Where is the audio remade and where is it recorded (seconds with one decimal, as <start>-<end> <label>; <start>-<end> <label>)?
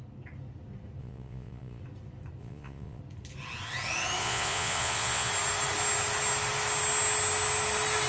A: 0.0-1.0 recorded; 1.0-1.8 remade; 1.8-2.4 recorded; 2.4-3.0 remade; 3.0-4.2 recorded; 4.2-5.3 remade; 5.3-8.1 recorded